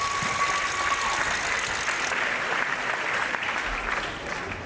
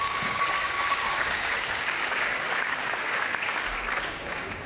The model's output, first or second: second